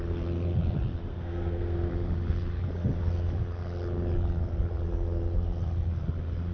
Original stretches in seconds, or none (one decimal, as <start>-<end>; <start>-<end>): 0.0-1.1; 1.9-6.5